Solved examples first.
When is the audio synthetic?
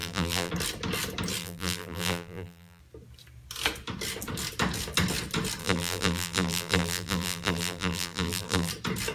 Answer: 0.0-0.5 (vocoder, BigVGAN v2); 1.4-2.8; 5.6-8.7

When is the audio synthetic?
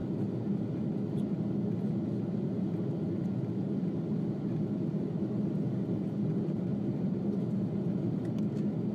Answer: 0.0-0.8 (vocoder, BigVGAN v2)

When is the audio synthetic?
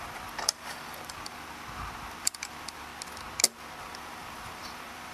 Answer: 0.0-2.9 (vocoder, BigVGAN v2); 3.8-5.1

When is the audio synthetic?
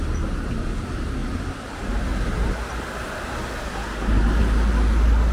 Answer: none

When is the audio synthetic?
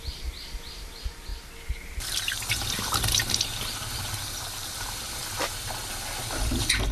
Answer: 0.0-1.3 (vocoder, BigVGAN v2); 3.3-5.2; 5.9-6.9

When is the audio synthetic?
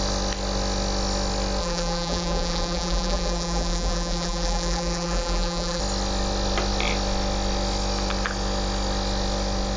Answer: 1.6-5.8 (vocoder, BigVGAN v2)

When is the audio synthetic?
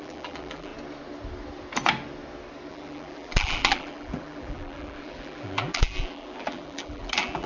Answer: 0.0-0.7 (vocoder, BigVGAN v2); 2.7-7.5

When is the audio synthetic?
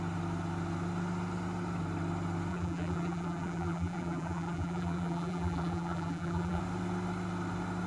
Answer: 2.5-6.6 (vocoder, BigVGAN v2)